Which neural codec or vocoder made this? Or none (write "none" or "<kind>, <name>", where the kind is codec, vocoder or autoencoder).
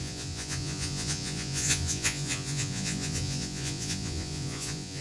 vocoder, Vocos